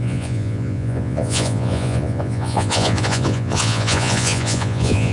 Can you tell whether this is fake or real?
fake